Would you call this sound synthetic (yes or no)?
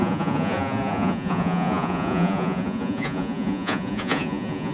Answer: yes